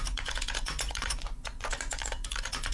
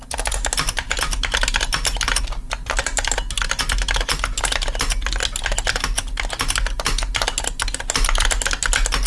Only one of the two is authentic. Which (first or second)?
second